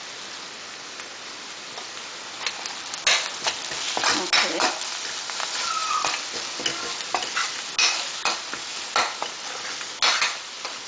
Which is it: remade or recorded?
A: recorded